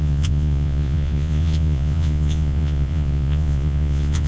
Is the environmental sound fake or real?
fake